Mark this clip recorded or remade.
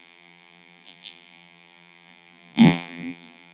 remade